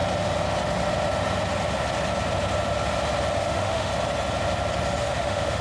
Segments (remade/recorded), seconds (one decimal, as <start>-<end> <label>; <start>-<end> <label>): 0.0-3.4 recorded; 3.4-3.9 remade; 3.9-5.0 recorded; 5.0-5.6 remade